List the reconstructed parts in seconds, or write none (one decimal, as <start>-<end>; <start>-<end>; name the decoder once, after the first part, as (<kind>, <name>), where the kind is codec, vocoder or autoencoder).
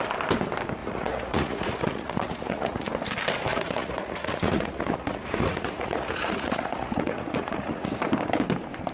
0.8-2.9 (vocoder, Vocos); 3.5-7.9